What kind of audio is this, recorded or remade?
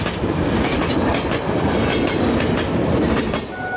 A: recorded